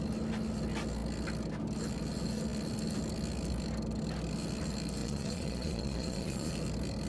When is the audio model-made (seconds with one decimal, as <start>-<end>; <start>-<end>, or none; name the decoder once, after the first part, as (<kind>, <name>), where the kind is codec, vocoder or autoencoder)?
5.0-6.5 (vocoder, Vocos)

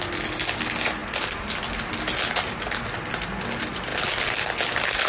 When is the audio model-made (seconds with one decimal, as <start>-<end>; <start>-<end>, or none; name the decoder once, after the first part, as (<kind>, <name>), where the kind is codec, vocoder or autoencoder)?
none

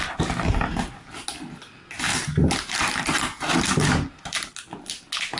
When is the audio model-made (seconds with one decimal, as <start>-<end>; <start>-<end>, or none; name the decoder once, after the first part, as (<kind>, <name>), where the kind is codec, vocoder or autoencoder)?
none

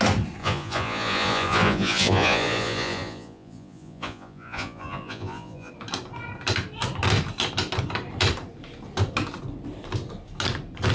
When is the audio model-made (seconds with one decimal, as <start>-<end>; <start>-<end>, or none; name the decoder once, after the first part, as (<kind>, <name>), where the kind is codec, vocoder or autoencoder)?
0.4-5.7 (vocoder, Vocos)